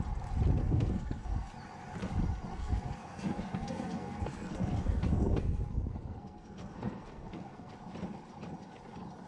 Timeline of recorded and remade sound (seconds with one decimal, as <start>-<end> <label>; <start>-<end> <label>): 0.0-0.6 recorded; 0.6-1.5 remade; 1.5-2.5 recorded; 2.5-7.7 remade; 7.7-9.3 recorded